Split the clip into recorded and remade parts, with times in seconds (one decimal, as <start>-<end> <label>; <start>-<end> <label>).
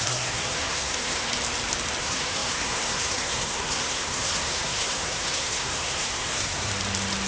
0.0-1.3 remade; 1.3-2.0 recorded; 2.0-6.7 remade; 6.7-7.3 recorded